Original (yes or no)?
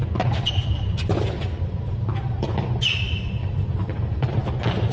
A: no